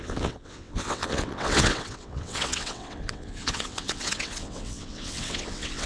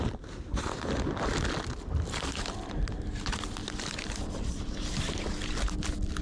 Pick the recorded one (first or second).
second